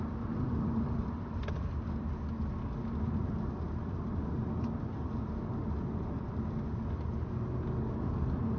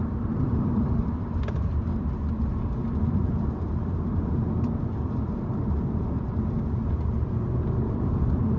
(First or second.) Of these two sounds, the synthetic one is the second